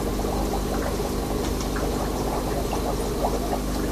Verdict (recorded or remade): recorded